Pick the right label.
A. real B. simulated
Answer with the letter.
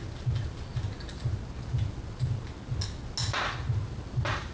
A